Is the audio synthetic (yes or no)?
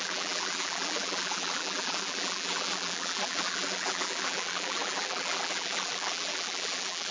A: yes